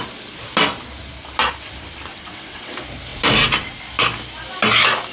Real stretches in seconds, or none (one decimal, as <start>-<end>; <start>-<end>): 0.0-2.1; 2.7-5.1